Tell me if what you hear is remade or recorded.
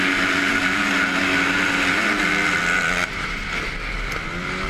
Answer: recorded